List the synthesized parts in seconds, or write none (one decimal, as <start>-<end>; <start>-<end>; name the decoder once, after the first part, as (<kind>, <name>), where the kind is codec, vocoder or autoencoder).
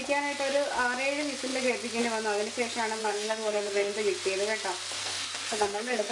3.0-3.9 (codec, SNAC); 5.0-6.1